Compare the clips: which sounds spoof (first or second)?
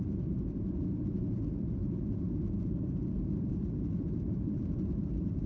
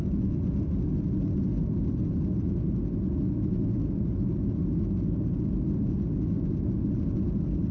first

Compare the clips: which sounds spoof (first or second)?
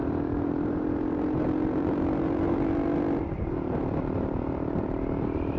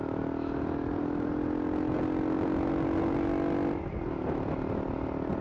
first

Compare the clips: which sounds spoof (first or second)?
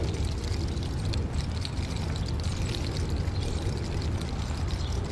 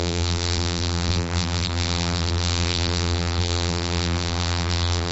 second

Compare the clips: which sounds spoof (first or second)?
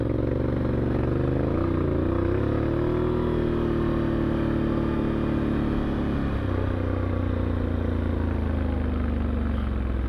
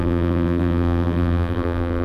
second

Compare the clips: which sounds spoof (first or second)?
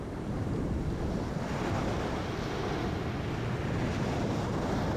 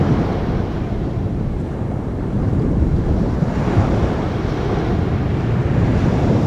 second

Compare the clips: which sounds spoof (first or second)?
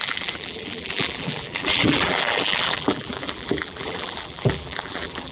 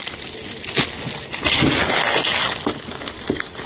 first